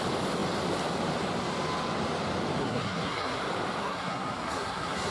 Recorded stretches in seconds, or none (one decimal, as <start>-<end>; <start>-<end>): 0.0-2.6; 3.4-3.8